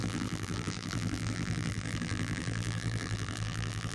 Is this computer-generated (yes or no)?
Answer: yes